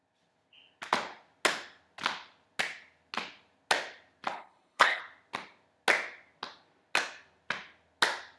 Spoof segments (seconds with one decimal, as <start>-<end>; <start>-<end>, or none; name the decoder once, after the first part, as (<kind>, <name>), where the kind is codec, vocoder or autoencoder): 4.3-5.0 (codec, HILCodec)